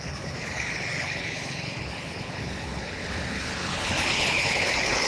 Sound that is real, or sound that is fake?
fake